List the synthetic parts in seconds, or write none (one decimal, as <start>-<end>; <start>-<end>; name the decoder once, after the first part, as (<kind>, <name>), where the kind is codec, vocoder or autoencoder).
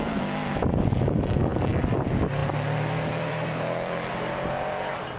0.0-5.2 (vocoder, BigVGAN v2)